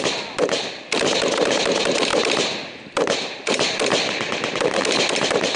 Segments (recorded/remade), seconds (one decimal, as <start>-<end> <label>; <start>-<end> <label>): 0.0-2.1 recorded; 2.1-5.6 remade

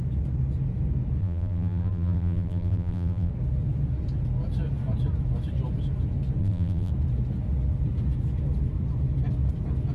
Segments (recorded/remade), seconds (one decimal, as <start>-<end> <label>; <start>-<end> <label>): 0.0-1.2 recorded; 1.2-3.3 remade; 3.3-6.4 recorded; 6.4-6.9 remade; 6.9-9.9 recorded

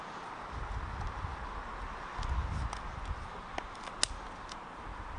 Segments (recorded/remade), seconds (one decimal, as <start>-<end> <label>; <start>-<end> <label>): 0.0-5.2 recorded

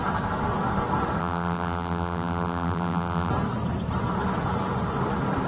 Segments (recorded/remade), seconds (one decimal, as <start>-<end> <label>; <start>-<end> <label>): 0.0-1.2 recorded; 1.2-3.3 remade; 3.3-5.5 recorded